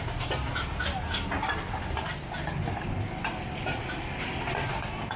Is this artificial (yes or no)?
no